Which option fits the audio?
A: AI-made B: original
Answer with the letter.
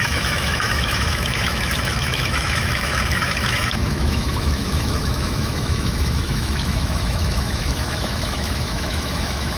A